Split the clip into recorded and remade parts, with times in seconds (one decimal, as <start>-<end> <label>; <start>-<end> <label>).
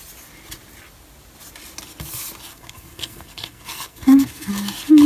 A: 0.0-2.5 recorded; 2.5-4.5 remade; 4.5-5.1 recorded